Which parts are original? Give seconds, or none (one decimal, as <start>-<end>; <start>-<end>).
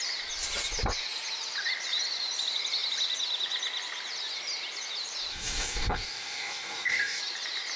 0.0-5.3; 7.2-7.8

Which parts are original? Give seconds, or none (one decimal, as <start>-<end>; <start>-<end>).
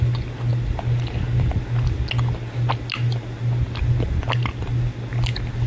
0.0-5.7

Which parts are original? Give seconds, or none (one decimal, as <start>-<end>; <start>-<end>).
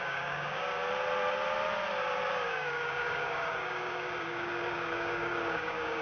0.8-2.3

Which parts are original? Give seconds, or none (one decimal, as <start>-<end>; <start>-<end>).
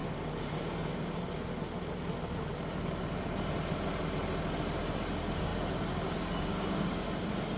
1.5-4.8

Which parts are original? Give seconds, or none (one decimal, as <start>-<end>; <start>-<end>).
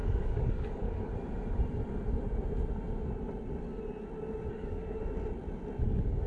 1.1-4.5; 5.0-5.8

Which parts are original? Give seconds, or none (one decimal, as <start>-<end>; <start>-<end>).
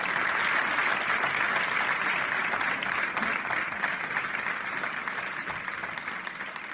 0.0-6.7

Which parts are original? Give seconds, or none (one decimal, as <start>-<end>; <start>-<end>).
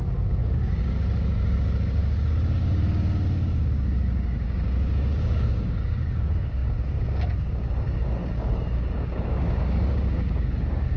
none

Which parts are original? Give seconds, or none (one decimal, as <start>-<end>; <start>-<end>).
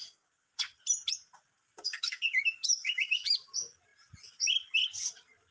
0.5-1.8; 3.0-5.5